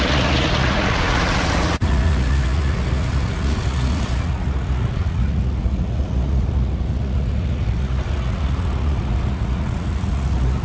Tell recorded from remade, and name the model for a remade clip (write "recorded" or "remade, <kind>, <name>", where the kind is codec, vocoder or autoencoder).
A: remade, vocoder, Vocos